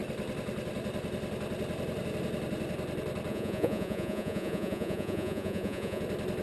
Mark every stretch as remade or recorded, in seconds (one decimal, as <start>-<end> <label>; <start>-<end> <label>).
0.0-3.3 recorded; 3.3-6.0 remade; 6.0-6.4 recorded